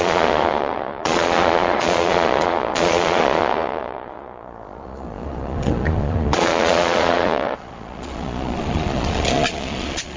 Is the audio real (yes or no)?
no